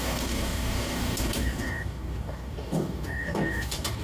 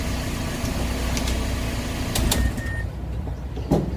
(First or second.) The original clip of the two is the second